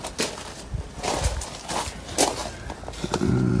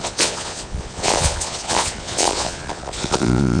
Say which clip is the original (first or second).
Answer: first